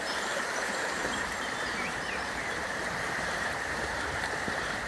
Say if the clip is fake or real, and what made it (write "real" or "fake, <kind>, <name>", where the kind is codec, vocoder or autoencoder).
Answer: fake, vocoder, BigVGAN v2